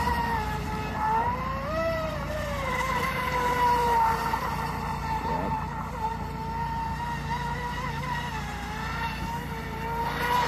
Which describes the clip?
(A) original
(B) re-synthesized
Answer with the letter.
B